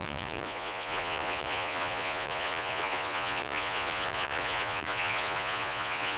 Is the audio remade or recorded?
remade